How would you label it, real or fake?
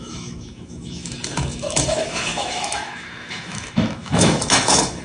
fake